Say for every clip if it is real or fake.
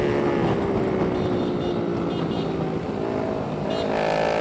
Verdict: real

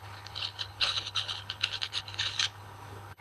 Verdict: fake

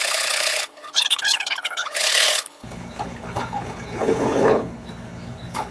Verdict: fake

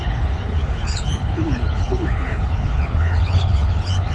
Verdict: fake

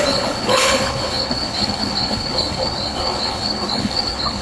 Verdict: fake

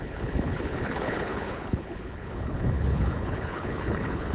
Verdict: fake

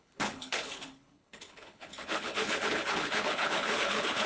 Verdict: fake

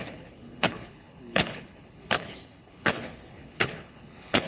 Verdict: fake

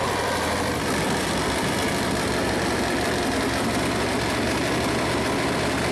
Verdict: real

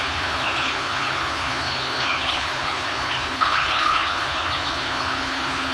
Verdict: fake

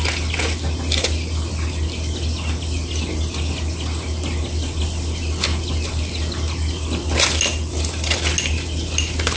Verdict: real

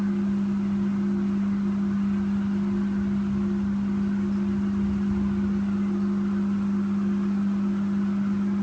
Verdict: real